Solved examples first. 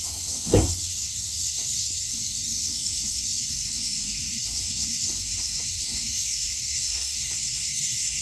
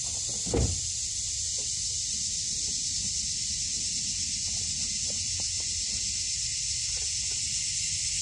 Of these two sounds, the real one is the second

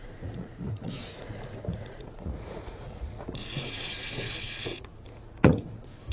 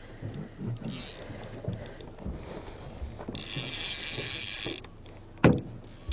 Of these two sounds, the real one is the second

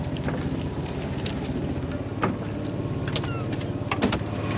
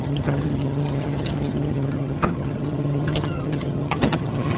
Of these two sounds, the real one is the first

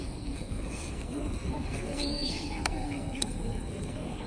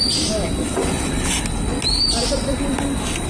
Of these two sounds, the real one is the second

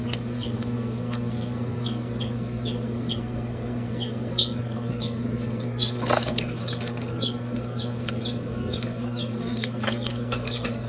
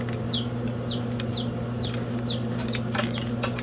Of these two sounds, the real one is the second